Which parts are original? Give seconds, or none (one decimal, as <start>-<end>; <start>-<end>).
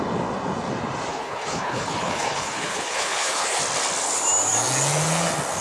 0.0-1.1; 3.6-5.6